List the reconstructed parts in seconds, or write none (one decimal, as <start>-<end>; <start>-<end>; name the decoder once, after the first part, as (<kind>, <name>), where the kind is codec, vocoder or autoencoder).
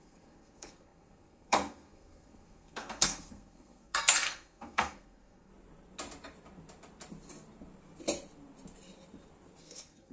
0.0-5.5 (codec, SNAC); 9.6-10.1